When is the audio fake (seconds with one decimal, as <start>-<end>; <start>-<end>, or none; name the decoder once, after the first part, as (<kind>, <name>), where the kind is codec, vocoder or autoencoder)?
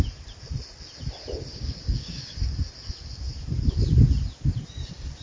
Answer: 1.5-2.4 (codec, DAC)